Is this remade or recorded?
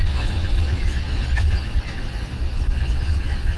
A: remade